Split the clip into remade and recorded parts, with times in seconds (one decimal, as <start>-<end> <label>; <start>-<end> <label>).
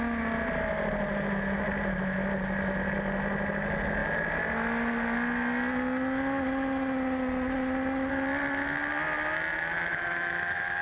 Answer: 0.0-9.9 recorded; 9.9-10.8 remade